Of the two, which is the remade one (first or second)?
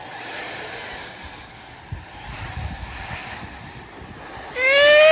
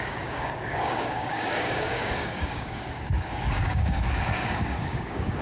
second